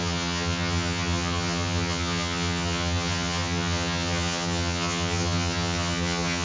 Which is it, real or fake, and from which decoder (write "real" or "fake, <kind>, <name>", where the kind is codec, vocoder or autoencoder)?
fake, vocoder, HiFi-GAN